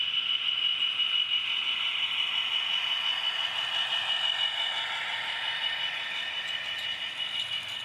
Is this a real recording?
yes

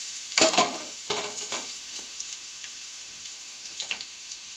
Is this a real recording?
no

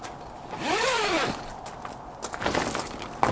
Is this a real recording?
yes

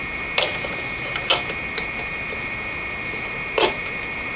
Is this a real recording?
yes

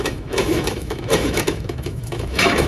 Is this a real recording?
no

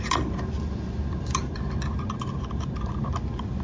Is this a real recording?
yes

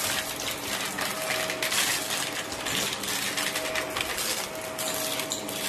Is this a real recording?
yes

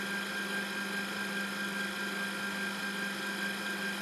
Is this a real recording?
yes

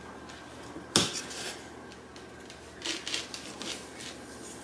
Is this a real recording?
yes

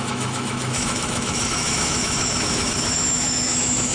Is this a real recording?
no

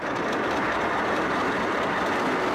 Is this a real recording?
yes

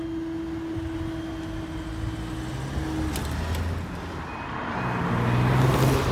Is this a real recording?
yes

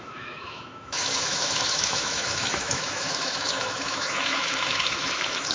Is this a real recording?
no